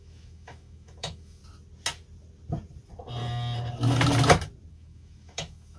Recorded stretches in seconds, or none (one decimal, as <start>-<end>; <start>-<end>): 1.4-4.7